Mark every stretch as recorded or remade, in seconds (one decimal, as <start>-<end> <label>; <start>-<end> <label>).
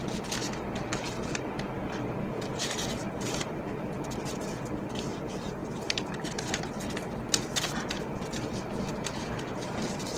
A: 0.0-2.6 recorded; 2.6-3.5 remade; 3.5-5.6 recorded; 5.6-6.7 remade; 6.7-10.2 recorded